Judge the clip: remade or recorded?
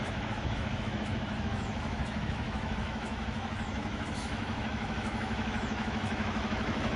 remade